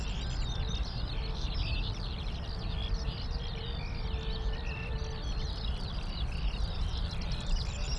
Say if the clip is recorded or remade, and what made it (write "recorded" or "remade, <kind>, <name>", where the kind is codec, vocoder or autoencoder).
recorded